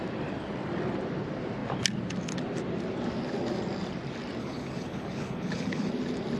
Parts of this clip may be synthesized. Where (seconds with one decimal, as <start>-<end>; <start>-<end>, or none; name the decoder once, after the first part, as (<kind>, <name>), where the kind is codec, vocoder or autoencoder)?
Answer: 4.4-5.9 (codec, HILCodec)